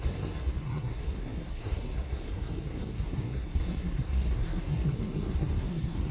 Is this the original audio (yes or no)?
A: no